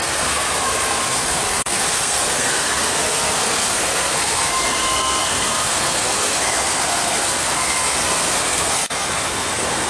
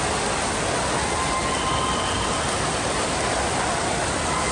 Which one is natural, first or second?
second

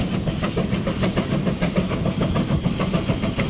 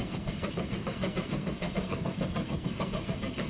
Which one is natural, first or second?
first